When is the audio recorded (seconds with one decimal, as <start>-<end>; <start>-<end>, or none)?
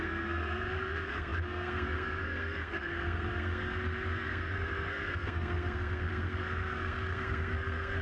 none